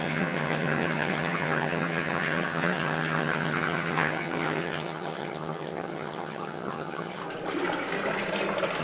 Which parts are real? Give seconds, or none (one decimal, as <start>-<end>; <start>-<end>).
7.2-8.8